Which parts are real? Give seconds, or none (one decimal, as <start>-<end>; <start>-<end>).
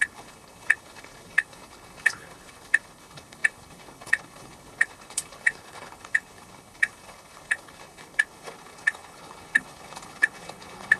none